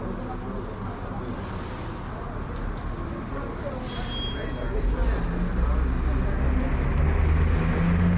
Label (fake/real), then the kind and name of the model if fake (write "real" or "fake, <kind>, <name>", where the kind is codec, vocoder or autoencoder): real